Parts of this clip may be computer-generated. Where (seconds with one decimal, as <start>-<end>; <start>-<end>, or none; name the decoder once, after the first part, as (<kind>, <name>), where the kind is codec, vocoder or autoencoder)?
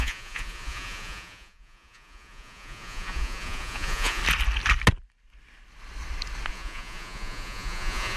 0.0-4.2 (vocoder, Vocos); 6.5-8.2